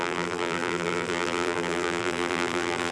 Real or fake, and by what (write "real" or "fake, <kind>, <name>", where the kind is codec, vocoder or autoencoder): fake, vocoder, BigVGAN v2